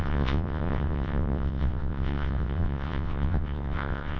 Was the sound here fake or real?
fake